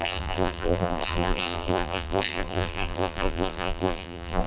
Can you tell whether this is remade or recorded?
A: remade